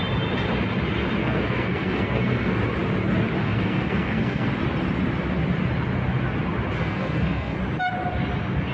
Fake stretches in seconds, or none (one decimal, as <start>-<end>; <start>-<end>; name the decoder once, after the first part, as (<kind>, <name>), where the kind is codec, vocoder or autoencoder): 1.2-2.6 (codec, SNAC); 3.4-4.5; 6.8-7.6